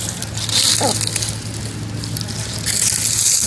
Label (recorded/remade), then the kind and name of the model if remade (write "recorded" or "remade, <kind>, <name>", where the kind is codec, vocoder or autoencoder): recorded